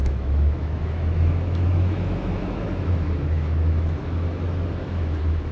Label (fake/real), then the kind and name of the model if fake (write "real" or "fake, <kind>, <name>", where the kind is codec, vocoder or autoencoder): fake, autoencoder, DAC-VAE